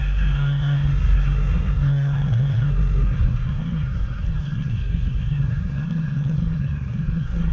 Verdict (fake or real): fake